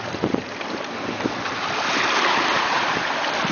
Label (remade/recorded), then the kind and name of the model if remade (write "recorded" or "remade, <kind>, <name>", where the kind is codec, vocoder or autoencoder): recorded